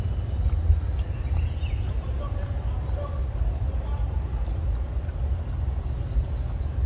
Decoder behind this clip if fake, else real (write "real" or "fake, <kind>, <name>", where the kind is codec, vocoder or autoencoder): real